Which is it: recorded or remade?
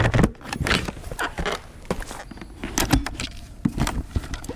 recorded